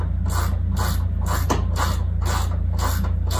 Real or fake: real